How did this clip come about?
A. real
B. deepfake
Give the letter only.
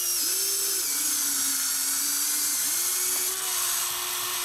A